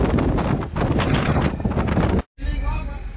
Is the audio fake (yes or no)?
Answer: no